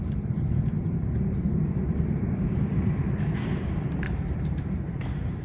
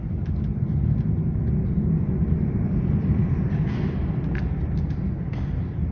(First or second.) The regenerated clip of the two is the first